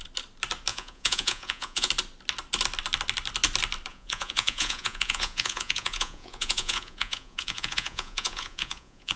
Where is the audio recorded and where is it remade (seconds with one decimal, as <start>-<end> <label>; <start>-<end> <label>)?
0.0-0.7 recorded; 0.7-1.9 remade; 1.9-3.9 recorded; 3.9-9.2 remade